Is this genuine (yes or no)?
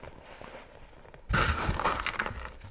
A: yes